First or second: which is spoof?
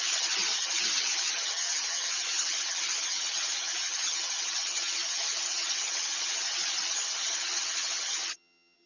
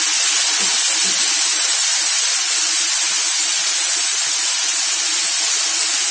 first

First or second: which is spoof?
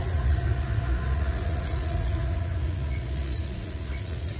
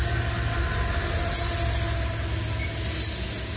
first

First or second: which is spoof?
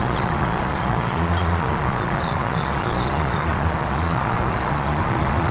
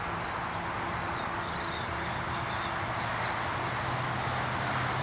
first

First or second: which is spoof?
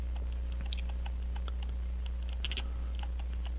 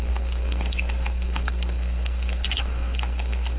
second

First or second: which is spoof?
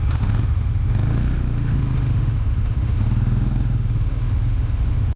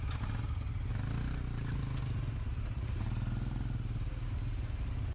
first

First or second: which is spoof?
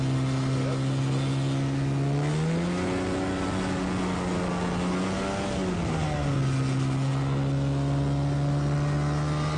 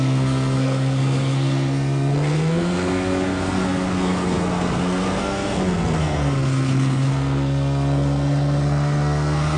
second